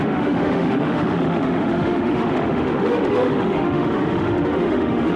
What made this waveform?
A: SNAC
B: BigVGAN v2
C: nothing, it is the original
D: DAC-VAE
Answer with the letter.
D